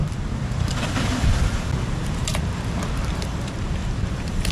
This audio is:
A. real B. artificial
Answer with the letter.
B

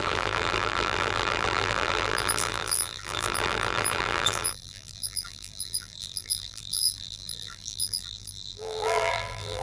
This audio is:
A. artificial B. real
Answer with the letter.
A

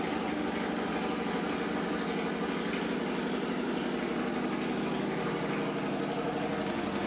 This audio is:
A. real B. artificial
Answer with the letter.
A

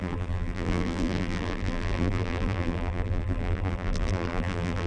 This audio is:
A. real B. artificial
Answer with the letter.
B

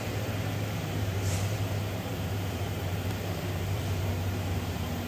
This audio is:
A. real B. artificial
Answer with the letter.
B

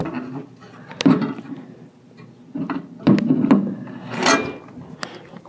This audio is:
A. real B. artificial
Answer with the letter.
A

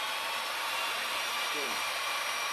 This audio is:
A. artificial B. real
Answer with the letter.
A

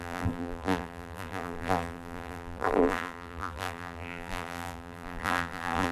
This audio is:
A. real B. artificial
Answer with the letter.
B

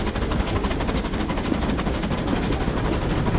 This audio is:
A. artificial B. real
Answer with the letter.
B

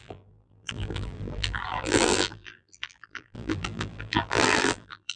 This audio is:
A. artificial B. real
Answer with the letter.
A